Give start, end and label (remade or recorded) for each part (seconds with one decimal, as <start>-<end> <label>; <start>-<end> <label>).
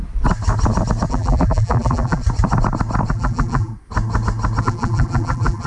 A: 0.0-1.1 recorded; 1.1-2.2 remade; 2.2-3.1 recorded; 3.1-3.7 remade; 3.7-4.6 recorded; 4.6-5.7 remade